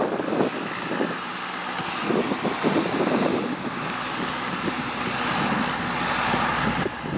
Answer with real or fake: real